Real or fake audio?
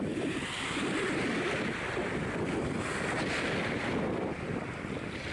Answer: real